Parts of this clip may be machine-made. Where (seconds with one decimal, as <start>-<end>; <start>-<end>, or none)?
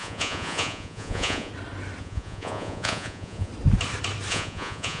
0.0-1.5; 2.0-3.5; 4.3-5.0